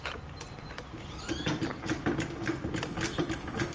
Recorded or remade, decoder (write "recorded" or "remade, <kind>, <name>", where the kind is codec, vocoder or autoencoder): recorded